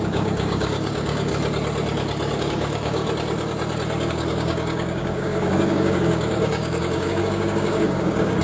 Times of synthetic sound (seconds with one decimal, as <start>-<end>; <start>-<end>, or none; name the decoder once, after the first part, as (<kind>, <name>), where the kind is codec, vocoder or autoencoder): 0.0-1.3 (codec, DAC); 2.4-3.0; 4.1-8.4